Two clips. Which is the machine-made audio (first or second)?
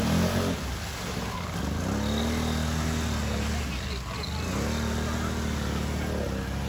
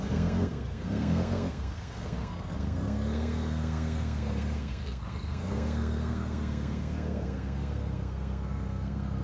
second